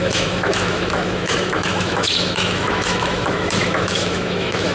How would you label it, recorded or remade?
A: remade